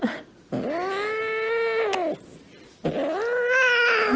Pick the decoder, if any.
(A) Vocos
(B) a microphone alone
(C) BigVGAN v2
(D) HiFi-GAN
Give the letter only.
B